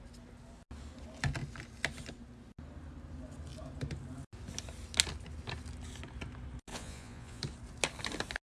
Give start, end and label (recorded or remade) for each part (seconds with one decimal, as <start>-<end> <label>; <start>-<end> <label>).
0.0-6.7 recorded; 6.7-7.4 remade; 7.4-8.5 recorded